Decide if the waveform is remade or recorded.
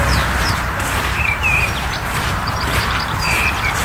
remade